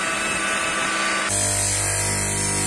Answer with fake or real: real